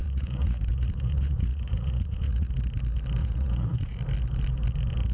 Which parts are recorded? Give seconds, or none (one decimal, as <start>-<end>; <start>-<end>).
2.5-3.2; 4.0-5.1